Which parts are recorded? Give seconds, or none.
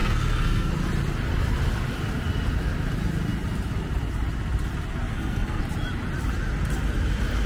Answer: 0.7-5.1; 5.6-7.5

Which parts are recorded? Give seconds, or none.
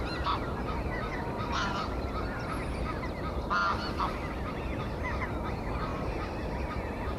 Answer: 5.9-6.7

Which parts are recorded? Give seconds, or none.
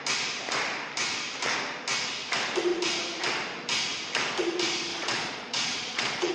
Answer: 0.0-4.9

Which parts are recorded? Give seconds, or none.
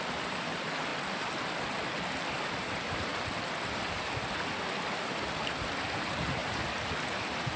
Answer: 0.9-2.3; 3.1-5.9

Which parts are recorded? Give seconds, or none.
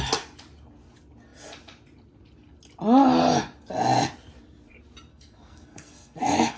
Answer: 0.0-5.1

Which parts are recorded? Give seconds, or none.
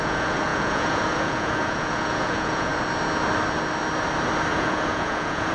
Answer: 2.7-4.5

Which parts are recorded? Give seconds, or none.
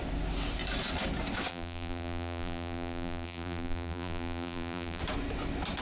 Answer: 0.0-1.5; 5.0-5.8